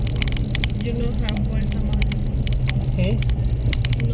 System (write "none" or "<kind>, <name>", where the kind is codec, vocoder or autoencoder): none